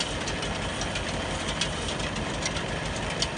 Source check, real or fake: real